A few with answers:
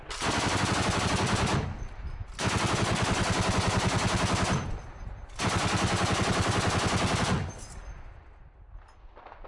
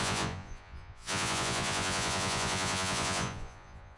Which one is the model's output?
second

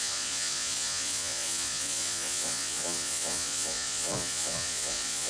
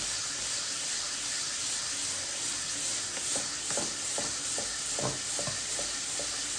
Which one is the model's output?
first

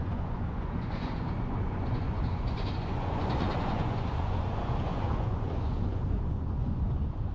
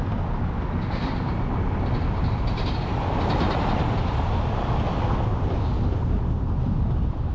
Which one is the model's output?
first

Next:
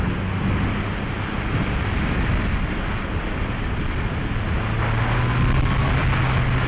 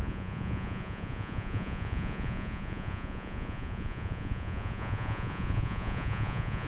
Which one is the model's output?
second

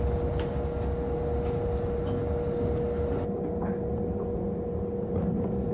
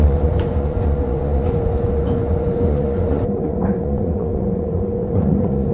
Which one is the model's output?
second